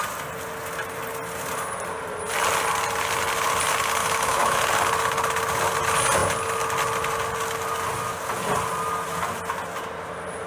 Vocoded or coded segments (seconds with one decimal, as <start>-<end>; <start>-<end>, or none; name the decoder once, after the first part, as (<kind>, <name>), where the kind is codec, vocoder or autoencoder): 4.0-4.6 (autoencoder, DAC-VAE)